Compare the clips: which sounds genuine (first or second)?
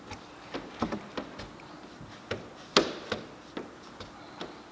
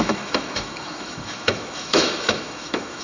first